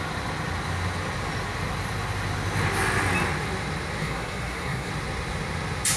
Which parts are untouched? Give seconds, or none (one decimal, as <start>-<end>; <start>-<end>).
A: 0.0-4.0; 4.9-6.0